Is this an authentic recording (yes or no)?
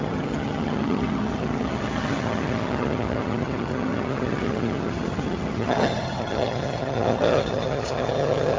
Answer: no